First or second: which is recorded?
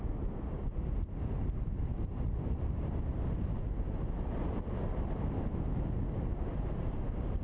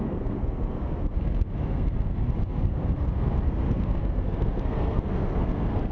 first